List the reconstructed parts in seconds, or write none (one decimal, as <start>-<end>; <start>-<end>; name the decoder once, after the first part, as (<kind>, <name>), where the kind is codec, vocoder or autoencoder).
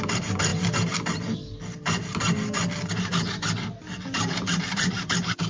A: 0.0-0.5 (vocoder, BigVGAN v2); 3.8-5.5